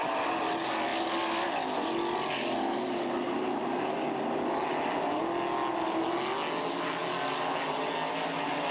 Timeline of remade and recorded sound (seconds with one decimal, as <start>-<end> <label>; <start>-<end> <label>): 0.0-8.7 recorded